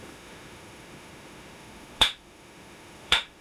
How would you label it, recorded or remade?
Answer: remade